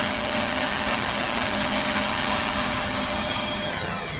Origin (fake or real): fake